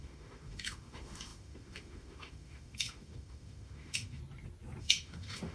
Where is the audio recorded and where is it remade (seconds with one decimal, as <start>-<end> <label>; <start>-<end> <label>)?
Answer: 0.0-4.2 remade; 4.2-4.8 recorded; 4.8-5.5 remade

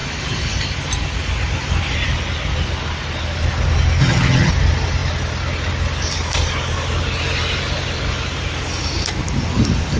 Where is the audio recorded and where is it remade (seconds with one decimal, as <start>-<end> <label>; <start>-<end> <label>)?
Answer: 0.0-4.0 recorded; 4.0-4.5 remade; 4.5-10.0 recorded